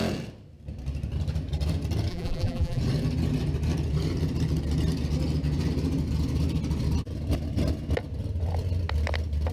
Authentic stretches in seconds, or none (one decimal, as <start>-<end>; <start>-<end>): 0.0-2.1; 2.8-9.5